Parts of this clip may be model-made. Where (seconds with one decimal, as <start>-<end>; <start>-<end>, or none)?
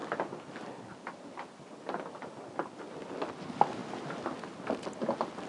none